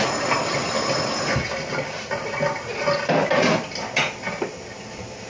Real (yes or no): yes